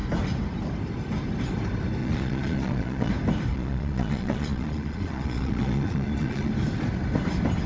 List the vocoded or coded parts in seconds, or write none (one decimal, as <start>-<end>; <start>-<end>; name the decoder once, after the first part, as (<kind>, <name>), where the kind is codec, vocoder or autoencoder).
2.0-3.1 (vocoder, Vocos); 3.5-6.5